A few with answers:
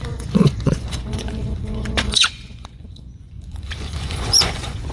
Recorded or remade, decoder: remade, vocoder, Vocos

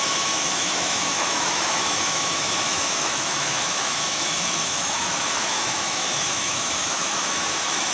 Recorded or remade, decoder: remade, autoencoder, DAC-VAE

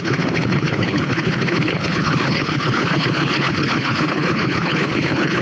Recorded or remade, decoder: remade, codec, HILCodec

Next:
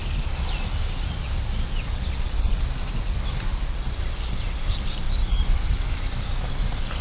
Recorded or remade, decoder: remade, vocoder, BigVGAN v2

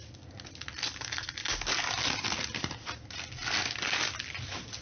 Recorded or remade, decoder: recorded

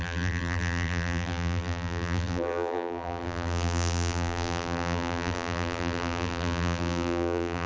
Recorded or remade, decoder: remade, vocoder, BigVGAN v2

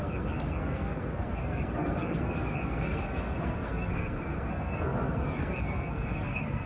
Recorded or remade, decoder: remade, codec, SNAC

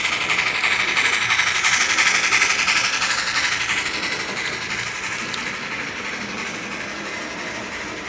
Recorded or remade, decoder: recorded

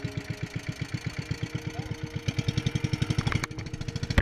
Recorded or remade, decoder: recorded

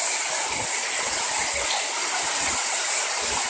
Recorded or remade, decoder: recorded